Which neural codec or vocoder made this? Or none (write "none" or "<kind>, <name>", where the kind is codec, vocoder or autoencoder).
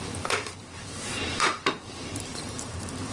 vocoder, BigVGAN v2